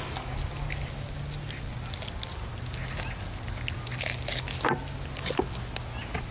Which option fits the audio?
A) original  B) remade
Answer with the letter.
A